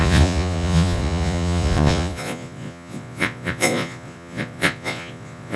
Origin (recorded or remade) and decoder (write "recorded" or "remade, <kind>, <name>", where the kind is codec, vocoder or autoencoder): remade, vocoder, Vocos